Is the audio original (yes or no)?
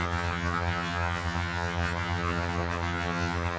no